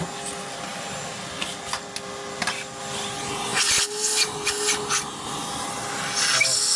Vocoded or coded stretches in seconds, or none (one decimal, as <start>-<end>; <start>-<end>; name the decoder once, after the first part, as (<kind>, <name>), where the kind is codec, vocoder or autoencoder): none

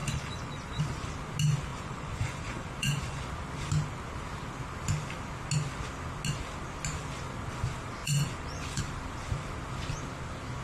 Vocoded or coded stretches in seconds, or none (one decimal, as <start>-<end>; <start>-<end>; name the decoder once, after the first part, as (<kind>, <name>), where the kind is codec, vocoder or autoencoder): 0.0-0.8 (vocoder, Vocos); 1.7-3.2; 8.0-8.8